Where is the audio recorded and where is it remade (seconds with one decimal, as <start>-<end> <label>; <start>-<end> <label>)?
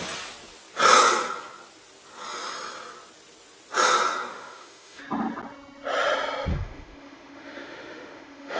0.0-4.3 recorded; 4.3-5.0 remade; 5.0-6.5 recorded; 6.5-8.6 remade